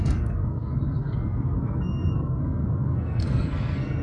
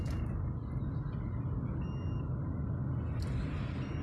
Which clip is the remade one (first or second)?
first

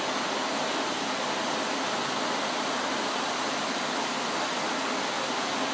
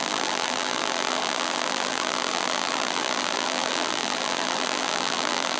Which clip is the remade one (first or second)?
second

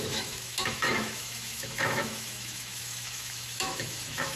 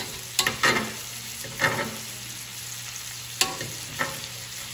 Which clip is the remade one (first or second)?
first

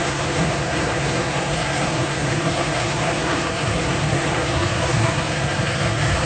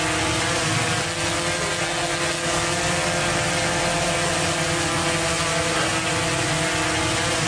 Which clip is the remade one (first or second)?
first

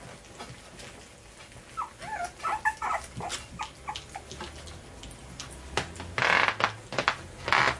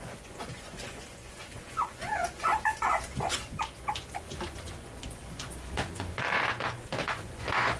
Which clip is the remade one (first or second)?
second